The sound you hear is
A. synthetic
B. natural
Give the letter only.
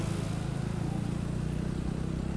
B